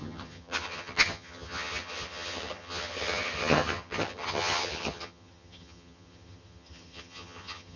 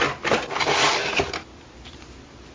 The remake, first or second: first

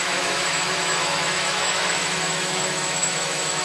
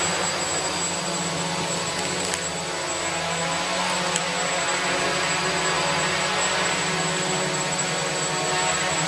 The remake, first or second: first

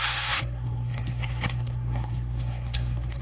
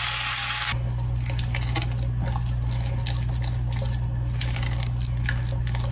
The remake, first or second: first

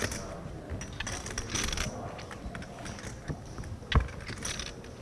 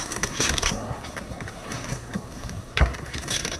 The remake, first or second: second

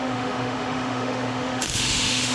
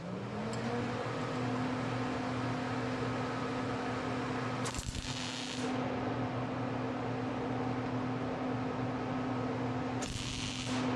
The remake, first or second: first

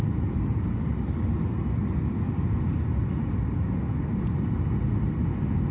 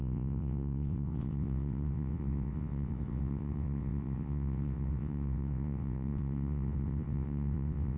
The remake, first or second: second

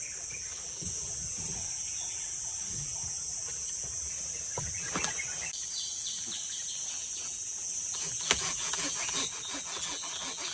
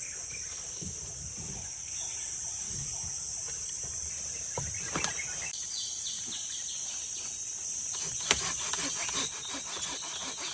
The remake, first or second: first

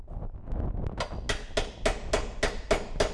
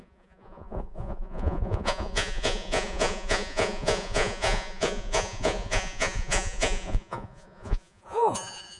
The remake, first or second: second